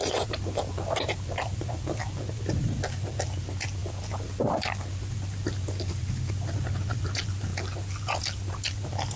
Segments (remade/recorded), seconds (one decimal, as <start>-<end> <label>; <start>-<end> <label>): 0.0-9.2 recorded